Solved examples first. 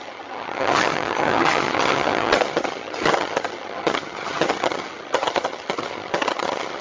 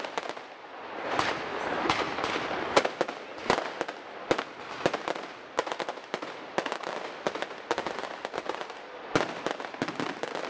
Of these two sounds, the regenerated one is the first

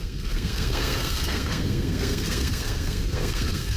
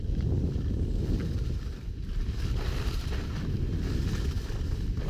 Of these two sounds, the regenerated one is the first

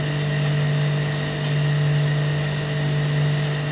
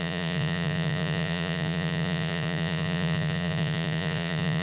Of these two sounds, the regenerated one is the second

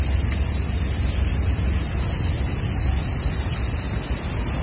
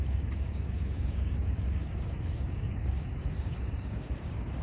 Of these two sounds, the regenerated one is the second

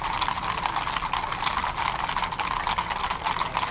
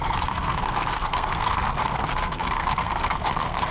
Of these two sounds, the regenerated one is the second